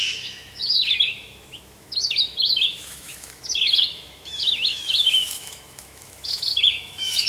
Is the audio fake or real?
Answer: fake